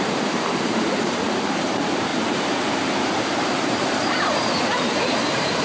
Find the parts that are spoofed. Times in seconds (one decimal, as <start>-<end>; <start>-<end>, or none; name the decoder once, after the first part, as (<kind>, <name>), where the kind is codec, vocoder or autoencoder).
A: 0.0-5.6 (vocoder, BigVGAN v2)